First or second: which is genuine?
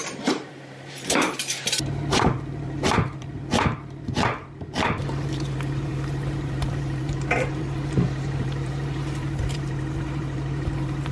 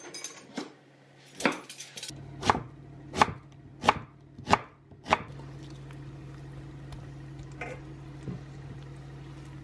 second